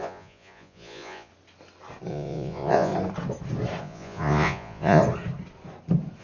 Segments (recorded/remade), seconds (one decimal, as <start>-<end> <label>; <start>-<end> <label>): 0.0-1.3 remade; 1.3-2.1 recorded; 2.1-2.9 remade; 2.9-3.8 recorded; 3.8-5.0 remade; 5.0-6.2 recorded